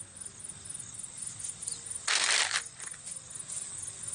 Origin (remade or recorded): recorded